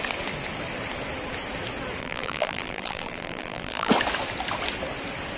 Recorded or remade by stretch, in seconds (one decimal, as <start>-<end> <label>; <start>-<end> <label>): 0.0-2.0 recorded; 2.0-3.9 remade; 3.9-5.4 recorded